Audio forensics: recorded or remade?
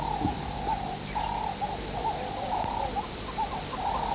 recorded